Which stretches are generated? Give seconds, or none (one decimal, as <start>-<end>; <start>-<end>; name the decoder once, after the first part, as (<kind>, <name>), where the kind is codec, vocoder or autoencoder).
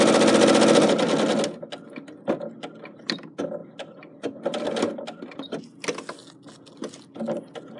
3.6-5.6 (vocoder, BigVGAN v2)